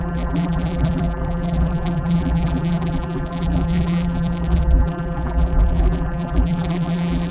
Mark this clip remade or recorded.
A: remade